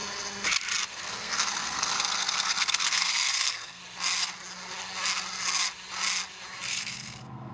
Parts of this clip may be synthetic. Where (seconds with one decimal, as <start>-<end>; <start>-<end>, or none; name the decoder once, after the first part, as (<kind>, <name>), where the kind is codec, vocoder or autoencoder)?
0.9-3.8 (codec, SNAC); 6.7-7.5